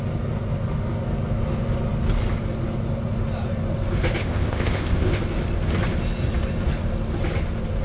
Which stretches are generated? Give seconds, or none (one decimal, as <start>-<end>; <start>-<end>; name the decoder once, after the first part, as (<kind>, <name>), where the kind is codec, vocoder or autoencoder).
4.2-5.2 (codec, ZipCodec)

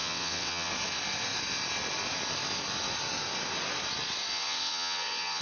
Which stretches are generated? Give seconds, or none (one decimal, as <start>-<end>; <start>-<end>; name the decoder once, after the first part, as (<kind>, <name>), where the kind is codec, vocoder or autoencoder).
0.0-0.7 (vocoder, WaveNeXt); 4.3-5.4

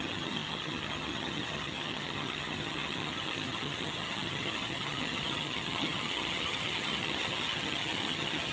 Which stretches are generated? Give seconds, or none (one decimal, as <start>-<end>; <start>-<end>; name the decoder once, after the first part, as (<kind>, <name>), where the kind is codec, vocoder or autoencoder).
0.0-8.5 (vocoder, HiFi-GAN)

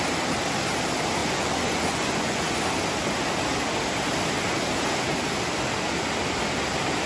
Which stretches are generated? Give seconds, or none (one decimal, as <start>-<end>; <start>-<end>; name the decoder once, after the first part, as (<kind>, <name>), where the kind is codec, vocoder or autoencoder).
1.2-2.6 (vocoder, Vocos)

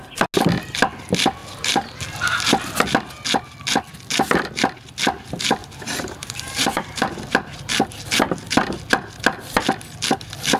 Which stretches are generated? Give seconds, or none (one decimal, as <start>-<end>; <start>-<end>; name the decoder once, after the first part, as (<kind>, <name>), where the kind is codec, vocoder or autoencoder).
1.4-2.0 (vocoder, BigVGAN v2); 5.6-7.1

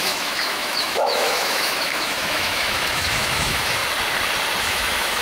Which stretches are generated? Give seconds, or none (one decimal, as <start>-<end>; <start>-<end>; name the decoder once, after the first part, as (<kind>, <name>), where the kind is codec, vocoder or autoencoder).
0.0-3.8 (autoencoder, DAC-VAE); 4.6-5.2